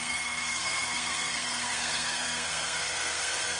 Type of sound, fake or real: fake